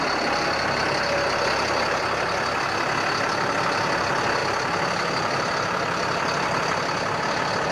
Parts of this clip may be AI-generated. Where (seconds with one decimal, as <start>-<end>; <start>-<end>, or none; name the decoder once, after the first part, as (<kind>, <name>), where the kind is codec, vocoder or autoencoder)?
none